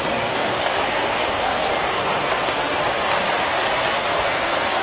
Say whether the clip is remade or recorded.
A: remade